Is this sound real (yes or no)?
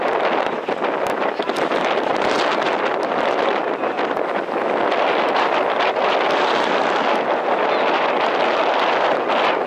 yes